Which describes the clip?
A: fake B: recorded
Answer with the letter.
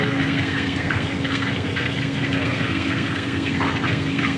A